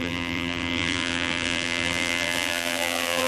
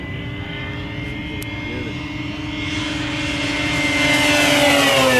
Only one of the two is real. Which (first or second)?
second